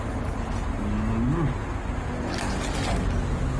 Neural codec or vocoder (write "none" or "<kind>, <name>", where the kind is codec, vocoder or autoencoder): none